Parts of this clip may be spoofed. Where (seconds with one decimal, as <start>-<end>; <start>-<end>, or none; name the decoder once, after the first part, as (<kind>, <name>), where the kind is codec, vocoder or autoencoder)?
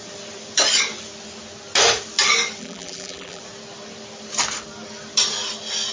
2.6-3.4 (vocoder, BigVGAN v2)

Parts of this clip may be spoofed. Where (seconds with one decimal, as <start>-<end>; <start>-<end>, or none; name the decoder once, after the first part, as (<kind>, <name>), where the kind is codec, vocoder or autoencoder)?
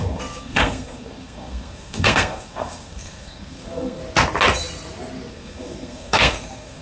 0.0-4.0 (codec, SNAC); 5.3-6.8